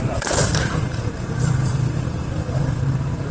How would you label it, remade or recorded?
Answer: remade